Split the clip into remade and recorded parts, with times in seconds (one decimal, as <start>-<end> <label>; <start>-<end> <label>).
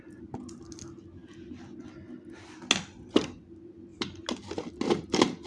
0.0-5.5 recorded